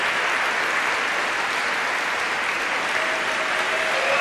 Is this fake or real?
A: real